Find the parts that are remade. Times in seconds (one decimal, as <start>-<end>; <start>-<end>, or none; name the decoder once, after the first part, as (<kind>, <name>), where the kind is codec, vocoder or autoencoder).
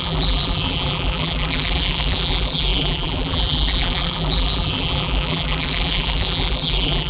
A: 0.0-7.1 (vocoder, BigVGAN v2)